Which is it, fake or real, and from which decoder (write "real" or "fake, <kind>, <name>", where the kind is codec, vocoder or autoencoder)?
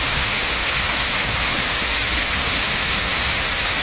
fake, autoencoder, DAC-VAE